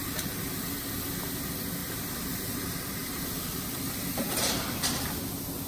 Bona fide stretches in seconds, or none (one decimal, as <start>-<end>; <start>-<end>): 0.7-1.8; 5.2-5.7